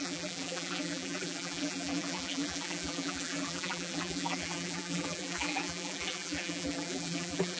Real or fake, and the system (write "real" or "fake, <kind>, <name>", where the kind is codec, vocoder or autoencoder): fake, vocoder, BigVGAN v2